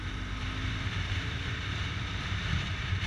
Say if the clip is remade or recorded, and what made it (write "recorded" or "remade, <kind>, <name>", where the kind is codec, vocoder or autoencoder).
remade, vocoder, BigVGAN v2